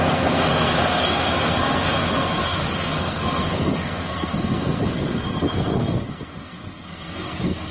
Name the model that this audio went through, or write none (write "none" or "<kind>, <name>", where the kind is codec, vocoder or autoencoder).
codec, SNAC